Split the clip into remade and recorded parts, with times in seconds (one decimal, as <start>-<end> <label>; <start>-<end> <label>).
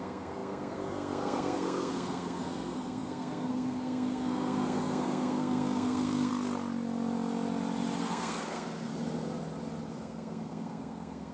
0.0-6.3 remade; 6.3-8.0 recorded; 8.0-8.9 remade; 8.9-9.9 recorded; 9.9-11.3 remade